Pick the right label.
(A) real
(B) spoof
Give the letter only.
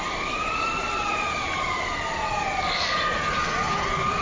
A